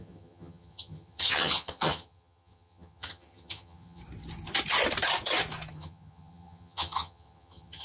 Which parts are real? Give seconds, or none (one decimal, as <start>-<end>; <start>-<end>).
4.0-5.7